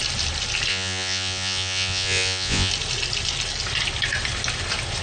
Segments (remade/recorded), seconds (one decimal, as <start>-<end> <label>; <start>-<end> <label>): 0.0-0.7 recorded; 0.7-2.7 remade; 2.7-5.0 recorded